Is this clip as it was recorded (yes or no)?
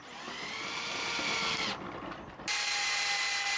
yes